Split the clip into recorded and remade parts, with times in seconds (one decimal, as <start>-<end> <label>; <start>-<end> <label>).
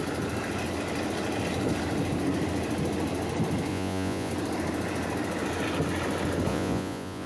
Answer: 0.0-3.7 recorded; 3.7-4.3 remade; 4.3-6.5 recorded; 6.5-7.3 remade